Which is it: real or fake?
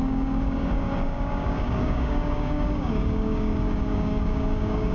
fake